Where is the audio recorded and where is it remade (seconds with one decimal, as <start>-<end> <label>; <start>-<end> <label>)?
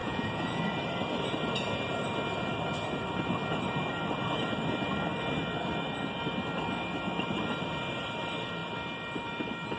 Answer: 0.0-0.6 remade; 0.6-9.8 recorded